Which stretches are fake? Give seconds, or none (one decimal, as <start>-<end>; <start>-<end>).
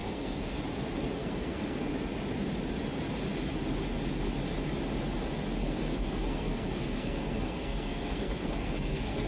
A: 0.0-0.6; 1.2-1.9; 5.6-9.3